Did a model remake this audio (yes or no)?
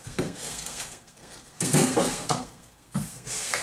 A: yes